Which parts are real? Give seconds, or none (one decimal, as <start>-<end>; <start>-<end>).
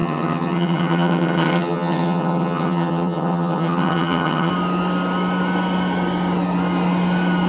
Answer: 4.5-7.5